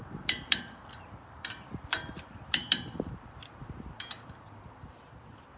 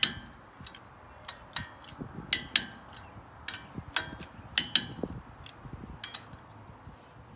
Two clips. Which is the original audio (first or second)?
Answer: second